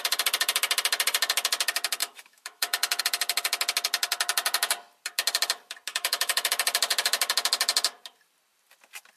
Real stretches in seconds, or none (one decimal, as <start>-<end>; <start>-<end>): 0.0-2.0; 3.0-5.9; 6.5-9.2